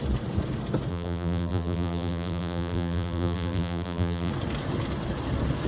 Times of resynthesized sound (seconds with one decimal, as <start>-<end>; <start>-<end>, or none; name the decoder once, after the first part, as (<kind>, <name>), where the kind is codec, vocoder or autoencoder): 0.9-4.3 (vocoder, BigVGAN v2)